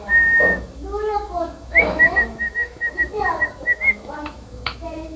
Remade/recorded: remade